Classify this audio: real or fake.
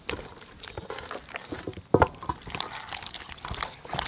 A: real